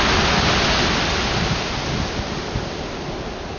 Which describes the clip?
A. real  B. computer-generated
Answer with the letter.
A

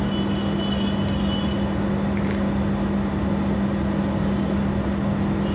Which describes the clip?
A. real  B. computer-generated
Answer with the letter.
A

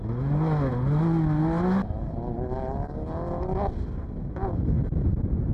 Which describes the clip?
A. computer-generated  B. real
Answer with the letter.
B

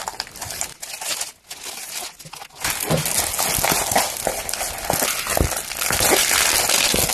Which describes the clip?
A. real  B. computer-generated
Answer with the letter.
A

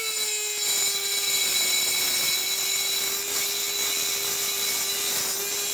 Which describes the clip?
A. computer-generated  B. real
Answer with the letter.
B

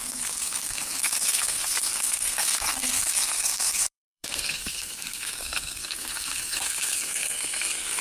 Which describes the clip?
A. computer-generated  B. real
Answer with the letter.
A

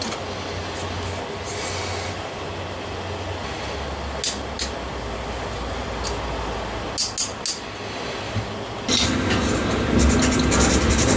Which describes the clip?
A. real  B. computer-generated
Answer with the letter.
A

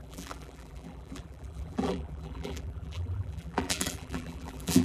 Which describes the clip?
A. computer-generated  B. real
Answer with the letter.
A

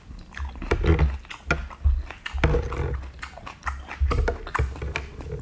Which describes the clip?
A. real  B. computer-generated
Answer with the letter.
A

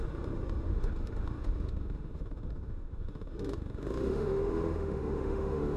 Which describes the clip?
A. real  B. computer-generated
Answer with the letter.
B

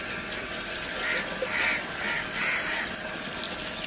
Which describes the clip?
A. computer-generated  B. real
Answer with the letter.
B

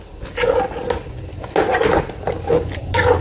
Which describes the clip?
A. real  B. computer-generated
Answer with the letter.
A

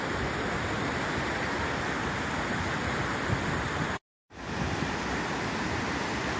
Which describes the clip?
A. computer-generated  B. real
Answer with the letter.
B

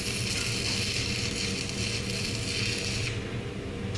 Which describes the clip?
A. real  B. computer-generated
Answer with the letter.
A